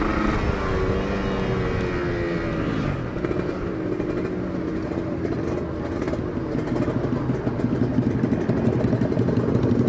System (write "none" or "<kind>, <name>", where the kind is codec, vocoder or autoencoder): none